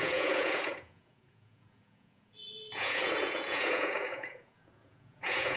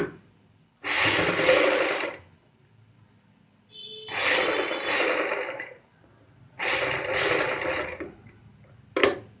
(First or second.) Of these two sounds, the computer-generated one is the first